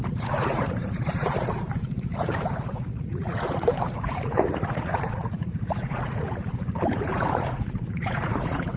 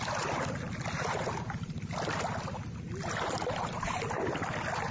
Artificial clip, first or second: first